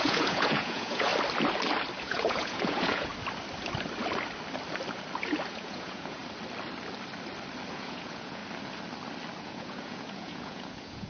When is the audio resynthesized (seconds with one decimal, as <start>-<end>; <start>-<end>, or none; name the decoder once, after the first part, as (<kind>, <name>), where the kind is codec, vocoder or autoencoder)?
0.0-1.1 (vocoder, Vocos); 2.0-3.1; 5.5-6.2; 7.7-8.4; 9.4-11.1